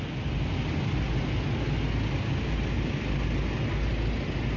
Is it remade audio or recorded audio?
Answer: recorded